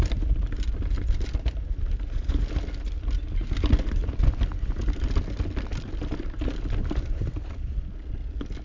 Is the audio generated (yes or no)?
no